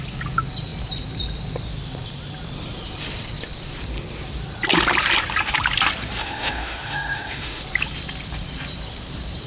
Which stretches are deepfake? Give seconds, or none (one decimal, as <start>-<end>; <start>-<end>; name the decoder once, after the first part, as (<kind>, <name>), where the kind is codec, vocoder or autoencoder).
6.2-7.6 (autoencoder, DAC-VAE)